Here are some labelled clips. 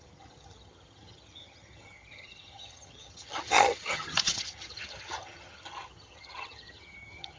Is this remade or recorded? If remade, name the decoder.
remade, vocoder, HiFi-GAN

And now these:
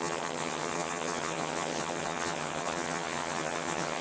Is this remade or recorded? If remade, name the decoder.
remade, vocoder, HiFi-GAN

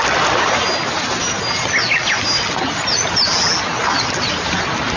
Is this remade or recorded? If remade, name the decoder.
recorded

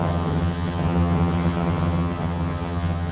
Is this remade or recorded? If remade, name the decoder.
remade, vocoder, HiFi-GAN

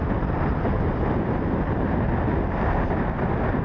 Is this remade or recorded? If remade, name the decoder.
recorded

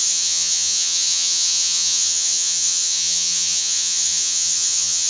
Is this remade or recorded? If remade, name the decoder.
remade, vocoder, HiFi-GAN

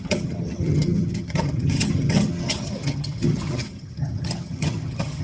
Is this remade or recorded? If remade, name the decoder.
remade, vocoder, HiFi-GAN